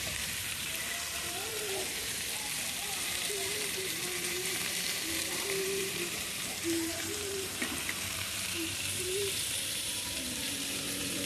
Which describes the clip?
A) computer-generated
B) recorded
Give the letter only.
A